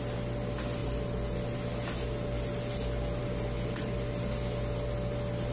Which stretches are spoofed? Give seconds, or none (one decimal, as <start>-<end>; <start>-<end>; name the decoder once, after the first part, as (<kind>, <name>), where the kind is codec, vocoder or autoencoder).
none